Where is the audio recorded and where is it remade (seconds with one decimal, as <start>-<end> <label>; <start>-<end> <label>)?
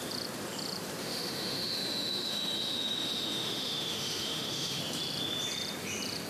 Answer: 0.0-1.0 recorded; 1.0-4.8 remade; 4.8-6.3 recorded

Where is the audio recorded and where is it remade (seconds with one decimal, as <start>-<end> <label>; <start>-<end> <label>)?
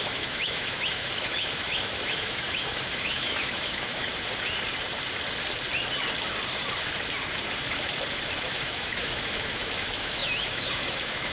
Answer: 0.0-4.1 remade; 4.1-8.5 recorded; 8.5-11.3 remade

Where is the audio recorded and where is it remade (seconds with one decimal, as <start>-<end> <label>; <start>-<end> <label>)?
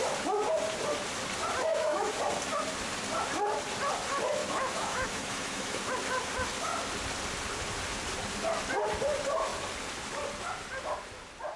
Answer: 0.0-1.7 recorded; 1.7-2.2 remade; 2.2-4.4 recorded; 4.4-5.8 remade; 5.8-11.6 recorded